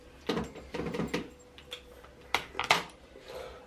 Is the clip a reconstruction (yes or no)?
no